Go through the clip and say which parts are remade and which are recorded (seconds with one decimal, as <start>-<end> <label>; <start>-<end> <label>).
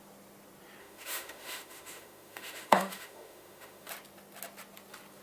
0.0-0.8 recorded; 0.8-3.9 remade; 3.9-5.2 recorded